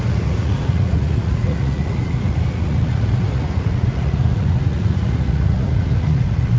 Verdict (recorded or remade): remade